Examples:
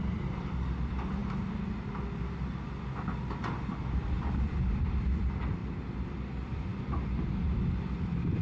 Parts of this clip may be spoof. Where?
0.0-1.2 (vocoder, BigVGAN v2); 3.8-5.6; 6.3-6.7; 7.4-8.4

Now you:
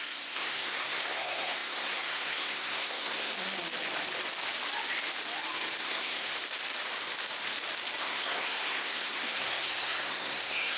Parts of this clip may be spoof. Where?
0.0-3.3 (codec, SNAC); 5.8-6.4; 8.0-10.8

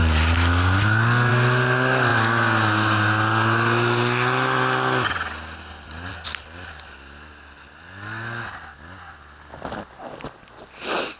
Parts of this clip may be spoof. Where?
none

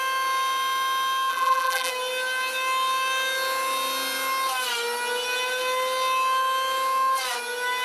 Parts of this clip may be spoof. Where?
1.3-1.9 (vocoder, BigVGAN v2)

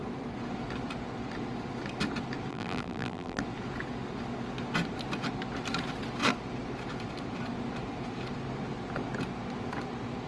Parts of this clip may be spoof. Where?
2.5-3.4 (vocoder, BigVGAN v2)